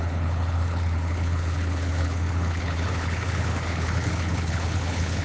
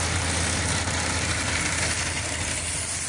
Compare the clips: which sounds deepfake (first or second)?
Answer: first